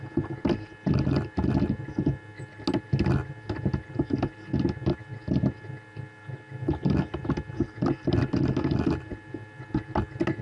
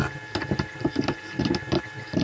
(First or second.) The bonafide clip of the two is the first